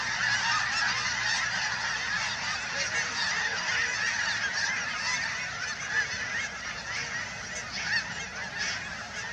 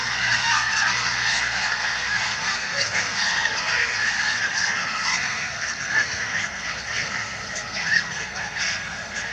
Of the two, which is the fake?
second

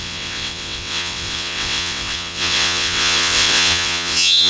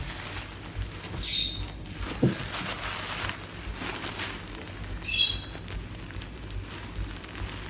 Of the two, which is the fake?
first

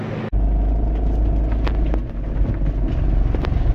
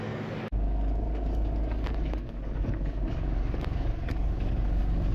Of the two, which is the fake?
second